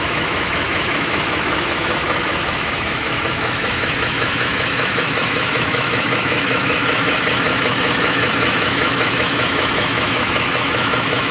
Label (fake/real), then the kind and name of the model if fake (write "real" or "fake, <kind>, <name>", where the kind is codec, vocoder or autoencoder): fake, autoencoder, DAC-VAE